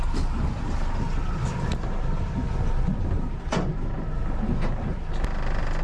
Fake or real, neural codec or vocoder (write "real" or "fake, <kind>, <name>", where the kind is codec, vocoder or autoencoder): real